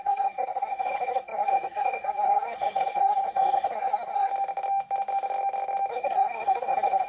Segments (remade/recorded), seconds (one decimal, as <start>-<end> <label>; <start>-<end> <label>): 0.0-4.3 remade; 4.3-5.9 recorded; 5.9-7.1 remade